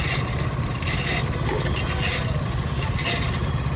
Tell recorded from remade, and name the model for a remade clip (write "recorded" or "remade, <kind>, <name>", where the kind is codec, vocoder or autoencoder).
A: recorded